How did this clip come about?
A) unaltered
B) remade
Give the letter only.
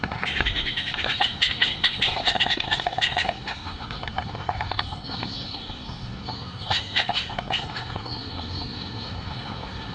B